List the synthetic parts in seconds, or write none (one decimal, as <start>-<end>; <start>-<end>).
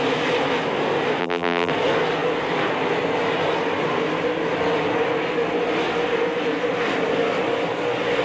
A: 1.2-1.7